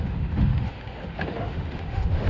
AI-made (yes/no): yes